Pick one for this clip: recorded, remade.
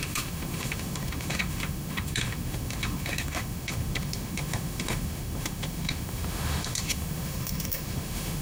remade